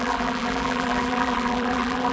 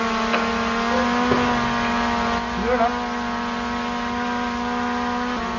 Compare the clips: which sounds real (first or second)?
second